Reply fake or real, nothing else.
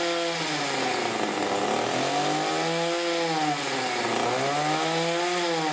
real